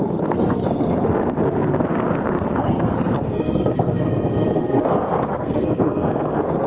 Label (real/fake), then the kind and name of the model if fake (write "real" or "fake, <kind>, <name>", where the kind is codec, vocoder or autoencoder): fake, codec, SNAC